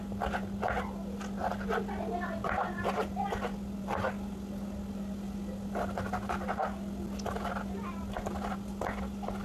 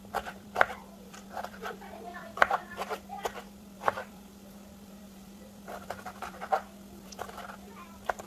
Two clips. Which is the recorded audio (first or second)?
first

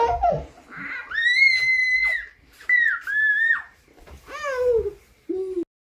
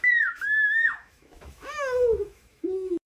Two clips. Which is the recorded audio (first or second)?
first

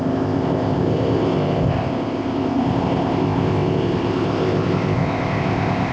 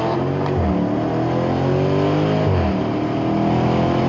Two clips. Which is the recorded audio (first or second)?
second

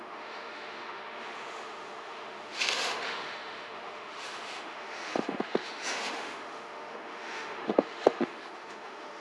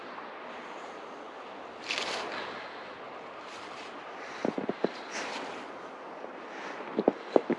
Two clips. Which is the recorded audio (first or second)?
second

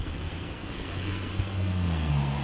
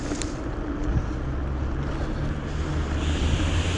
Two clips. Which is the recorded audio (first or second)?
second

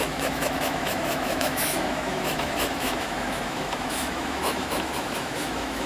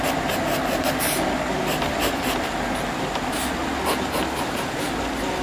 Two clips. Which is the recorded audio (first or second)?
second